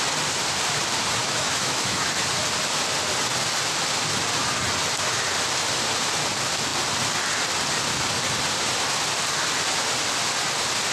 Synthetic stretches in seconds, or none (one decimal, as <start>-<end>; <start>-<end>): 1.2-2.0